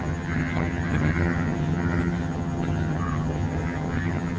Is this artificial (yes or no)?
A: yes